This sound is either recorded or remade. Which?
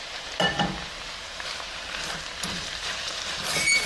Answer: remade